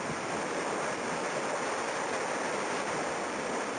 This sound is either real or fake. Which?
real